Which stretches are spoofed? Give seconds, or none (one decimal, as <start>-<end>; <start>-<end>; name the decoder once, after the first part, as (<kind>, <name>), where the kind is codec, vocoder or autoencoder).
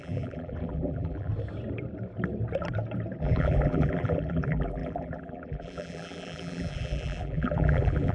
0.0-1.3 (vocoder, BigVGAN v2); 3.2-8.1